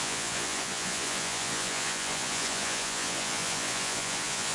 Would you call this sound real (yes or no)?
no